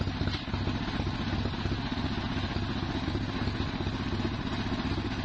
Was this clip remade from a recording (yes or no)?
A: no